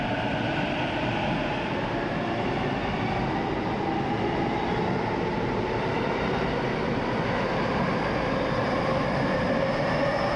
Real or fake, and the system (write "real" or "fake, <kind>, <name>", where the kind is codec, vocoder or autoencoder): real